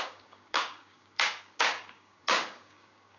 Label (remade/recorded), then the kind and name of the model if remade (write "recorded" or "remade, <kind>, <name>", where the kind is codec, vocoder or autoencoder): remade, codec, DAC